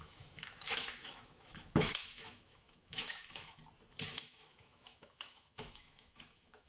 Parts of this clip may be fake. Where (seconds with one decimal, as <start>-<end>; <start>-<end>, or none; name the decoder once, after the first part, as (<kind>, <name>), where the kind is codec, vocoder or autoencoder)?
0.0-3.6 (autoencoder, DAC-VAE); 4.1-6.7